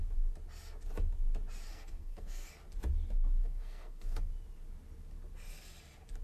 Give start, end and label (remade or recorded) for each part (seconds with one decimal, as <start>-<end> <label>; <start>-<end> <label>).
0.0-1.7 recorded; 1.7-2.5 remade; 2.5-3.4 recorded; 3.4-4.3 remade; 4.3-6.2 recorded